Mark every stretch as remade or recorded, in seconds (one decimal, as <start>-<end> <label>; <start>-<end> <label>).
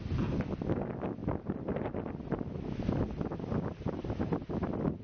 0.0-5.0 recorded